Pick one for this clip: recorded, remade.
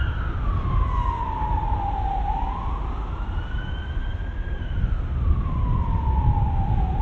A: recorded